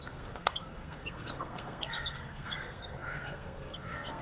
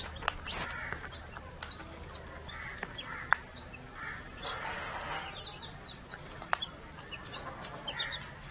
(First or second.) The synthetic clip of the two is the first